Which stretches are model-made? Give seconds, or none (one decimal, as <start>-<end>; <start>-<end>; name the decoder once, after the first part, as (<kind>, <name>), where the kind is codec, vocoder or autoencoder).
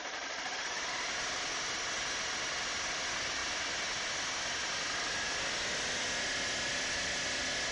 none